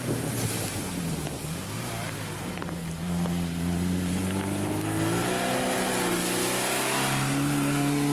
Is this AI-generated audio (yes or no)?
no